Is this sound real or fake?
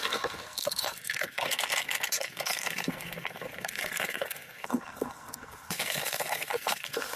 fake